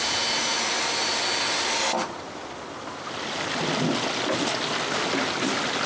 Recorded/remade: recorded